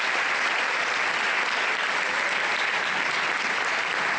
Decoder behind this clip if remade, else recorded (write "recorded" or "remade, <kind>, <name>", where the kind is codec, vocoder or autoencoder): recorded